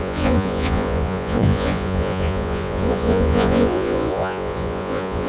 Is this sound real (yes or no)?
no